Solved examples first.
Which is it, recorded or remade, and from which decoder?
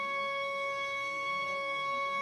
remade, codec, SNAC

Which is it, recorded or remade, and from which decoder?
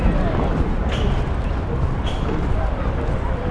recorded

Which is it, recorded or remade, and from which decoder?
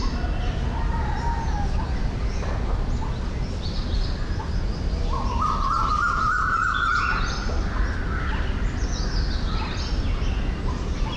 recorded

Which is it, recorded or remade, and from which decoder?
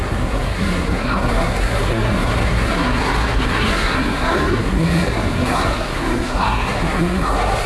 remade, codec, SNAC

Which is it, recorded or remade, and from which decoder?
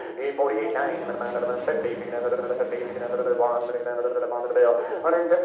remade, vocoder, BigVGAN v2